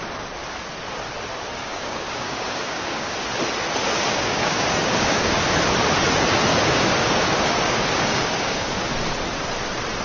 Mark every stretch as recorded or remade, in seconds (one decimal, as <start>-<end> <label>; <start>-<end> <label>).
0.0-1.6 recorded; 1.6-3.1 remade; 3.1-4.0 recorded; 4.0-5.4 remade; 5.4-6.5 recorded; 6.5-8.9 remade; 8.9-10.0 recorded